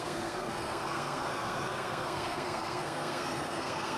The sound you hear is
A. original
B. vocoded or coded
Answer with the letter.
B